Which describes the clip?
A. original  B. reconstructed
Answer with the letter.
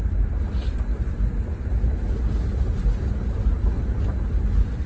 A